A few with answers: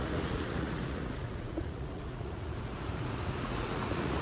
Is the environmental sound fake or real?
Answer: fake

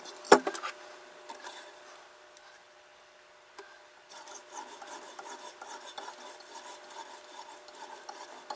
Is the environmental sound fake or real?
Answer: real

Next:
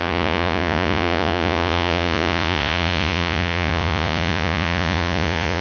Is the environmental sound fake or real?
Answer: fake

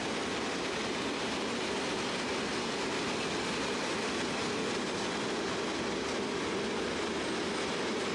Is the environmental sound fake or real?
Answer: real